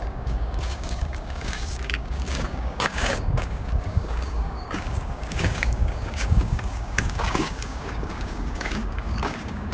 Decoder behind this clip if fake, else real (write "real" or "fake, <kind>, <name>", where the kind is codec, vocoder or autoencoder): fake, codec, DAC